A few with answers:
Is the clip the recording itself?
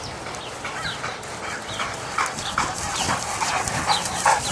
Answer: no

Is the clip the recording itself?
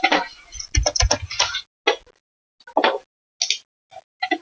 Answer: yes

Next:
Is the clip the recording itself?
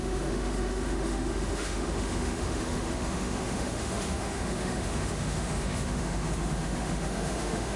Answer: no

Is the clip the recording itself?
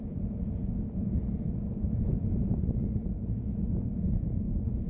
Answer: no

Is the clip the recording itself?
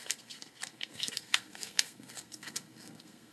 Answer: no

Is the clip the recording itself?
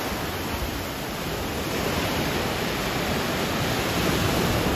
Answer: yes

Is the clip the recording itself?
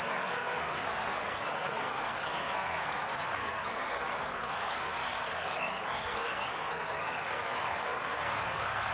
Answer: no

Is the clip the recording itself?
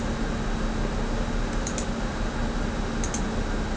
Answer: yes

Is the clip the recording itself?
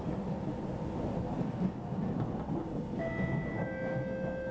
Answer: yes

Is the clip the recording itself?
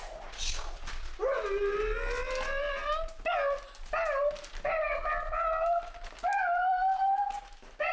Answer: yes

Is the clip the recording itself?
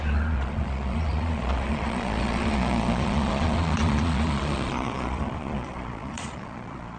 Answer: no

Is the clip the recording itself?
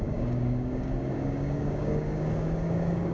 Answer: no